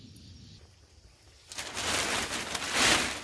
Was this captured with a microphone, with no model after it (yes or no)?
yes